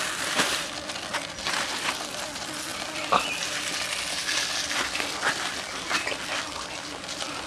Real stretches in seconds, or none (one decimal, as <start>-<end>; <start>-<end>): 0.0-7.5